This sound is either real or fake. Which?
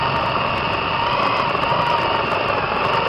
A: fake